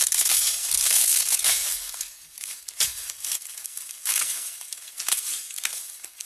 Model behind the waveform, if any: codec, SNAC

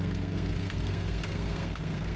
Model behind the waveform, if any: codec, SNAC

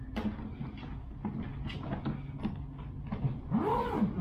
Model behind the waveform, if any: none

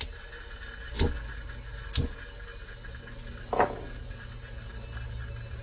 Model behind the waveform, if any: none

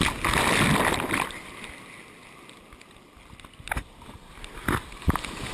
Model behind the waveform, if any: none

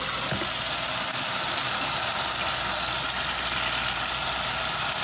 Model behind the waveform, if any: none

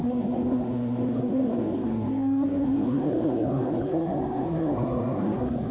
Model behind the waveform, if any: codec, SNAC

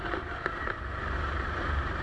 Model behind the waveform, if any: vocoder, BigVGAN v2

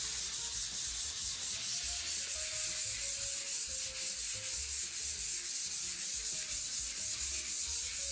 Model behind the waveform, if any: none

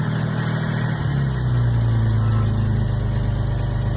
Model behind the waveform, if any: none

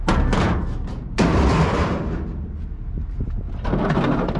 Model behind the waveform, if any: none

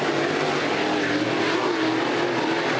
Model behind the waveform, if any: none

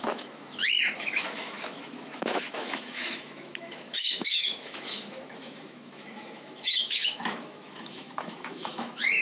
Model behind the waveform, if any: autoencoder, DAC-VAE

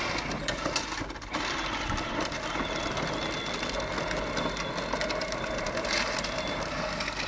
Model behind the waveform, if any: none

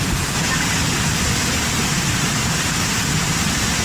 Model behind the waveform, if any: none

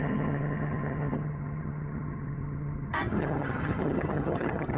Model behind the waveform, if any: vocoder, HiFi-GAN